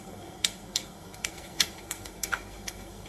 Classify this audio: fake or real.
fake